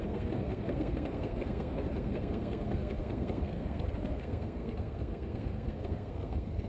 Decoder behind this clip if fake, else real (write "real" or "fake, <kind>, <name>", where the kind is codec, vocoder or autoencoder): fake, codec, SNAC